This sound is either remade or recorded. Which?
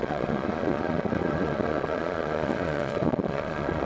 remade